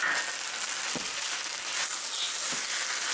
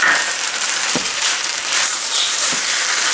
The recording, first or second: first